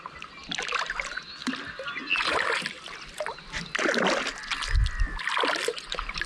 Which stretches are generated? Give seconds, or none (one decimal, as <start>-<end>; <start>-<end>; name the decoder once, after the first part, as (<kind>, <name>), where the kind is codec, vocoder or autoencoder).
none